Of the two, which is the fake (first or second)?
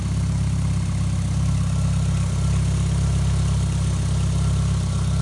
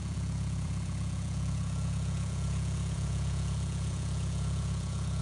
second